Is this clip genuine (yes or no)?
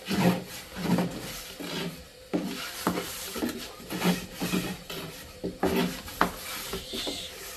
yes